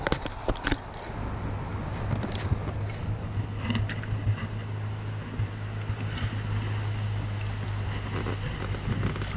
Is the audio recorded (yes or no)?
yes